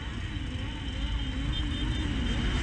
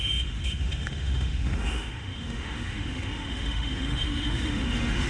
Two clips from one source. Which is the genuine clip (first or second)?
first